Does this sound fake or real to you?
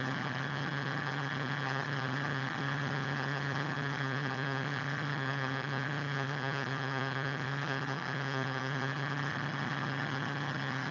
fake